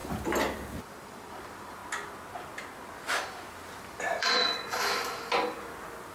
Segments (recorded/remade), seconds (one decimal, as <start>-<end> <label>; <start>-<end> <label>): 0.0-0.8 recorded; 0.8-1.8 remade; 1.8-3.8 recorded; 3.8-4.4 remade; 4.4-6.1 recorded